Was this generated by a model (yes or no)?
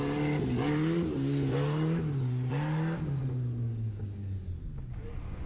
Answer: no